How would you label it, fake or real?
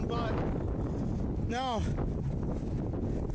real